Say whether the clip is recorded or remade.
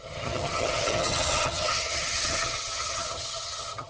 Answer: remade